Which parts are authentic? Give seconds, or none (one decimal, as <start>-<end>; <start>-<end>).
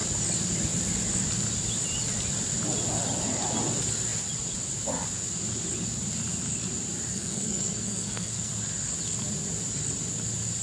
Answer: 0.0-7.1; 8.5-10.6